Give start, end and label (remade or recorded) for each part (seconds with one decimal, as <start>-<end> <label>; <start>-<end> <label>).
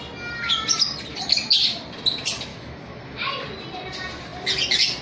0.0-2.5 recorded; 2.5-3.0 remade; 3.0-5.0 recorded